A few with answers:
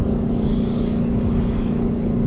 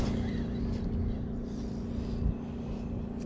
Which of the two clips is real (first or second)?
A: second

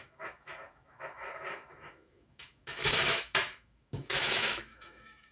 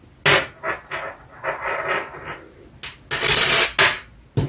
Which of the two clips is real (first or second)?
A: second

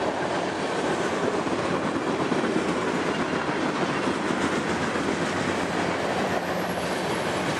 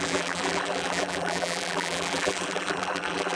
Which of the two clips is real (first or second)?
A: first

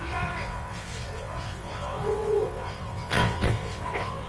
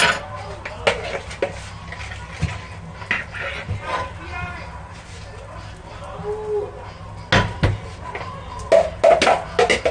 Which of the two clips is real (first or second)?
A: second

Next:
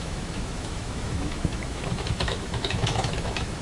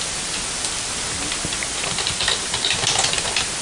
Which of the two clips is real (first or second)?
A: second